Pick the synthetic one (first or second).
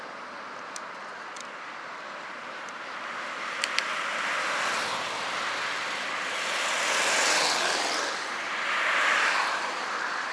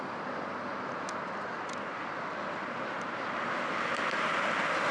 first